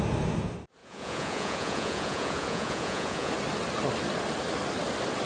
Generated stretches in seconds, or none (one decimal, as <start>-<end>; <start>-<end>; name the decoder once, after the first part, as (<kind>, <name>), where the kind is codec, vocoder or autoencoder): 0.8-3.3 (vocoder, Vocos)